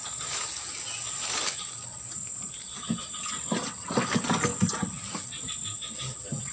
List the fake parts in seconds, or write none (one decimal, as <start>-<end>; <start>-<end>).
none